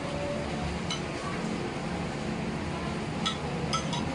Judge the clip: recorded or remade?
recorded